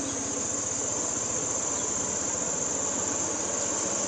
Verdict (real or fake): real